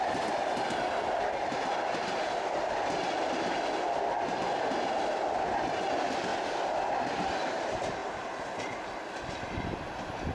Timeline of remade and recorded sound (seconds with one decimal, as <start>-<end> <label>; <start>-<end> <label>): 0.0-10.3 recorded